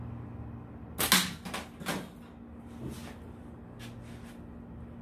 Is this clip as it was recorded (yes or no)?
yes